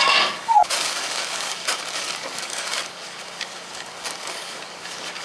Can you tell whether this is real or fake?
fake